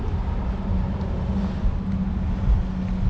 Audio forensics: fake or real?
real